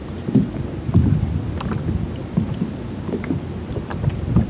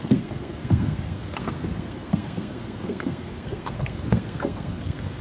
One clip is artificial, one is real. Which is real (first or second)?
first